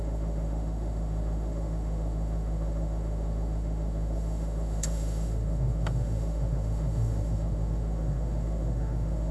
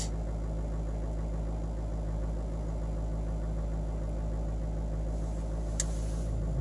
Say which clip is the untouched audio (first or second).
second